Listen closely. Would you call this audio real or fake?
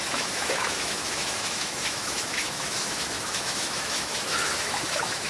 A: fake